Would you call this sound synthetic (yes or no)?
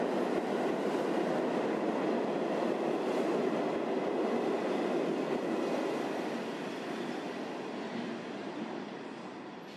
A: no